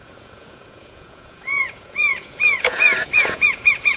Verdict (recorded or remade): remade